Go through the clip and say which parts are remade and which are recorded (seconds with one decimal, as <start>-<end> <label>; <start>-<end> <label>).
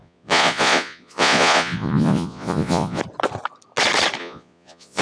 0.0-3.0 remade; 3.0-4.2 recorded; 4.2-5.0 remade